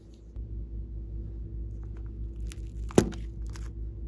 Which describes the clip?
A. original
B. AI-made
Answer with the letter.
A